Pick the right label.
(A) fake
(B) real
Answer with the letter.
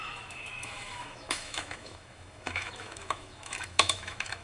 A